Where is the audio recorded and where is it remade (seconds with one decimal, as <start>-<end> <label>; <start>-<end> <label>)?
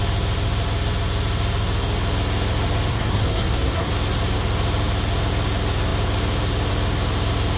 0.0-2.9 recorded; 2.9-3.9 remade; 3.9-7.6 recorded